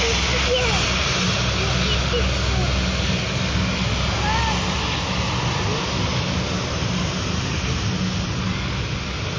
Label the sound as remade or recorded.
recorded